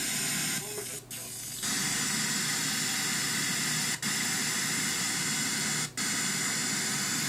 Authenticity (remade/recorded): recorded